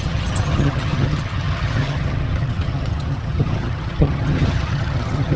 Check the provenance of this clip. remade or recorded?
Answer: remade